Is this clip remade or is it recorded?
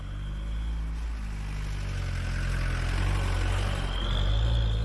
recorded